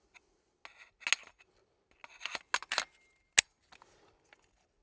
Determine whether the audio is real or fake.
real